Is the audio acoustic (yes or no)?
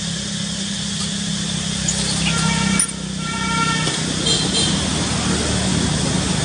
yes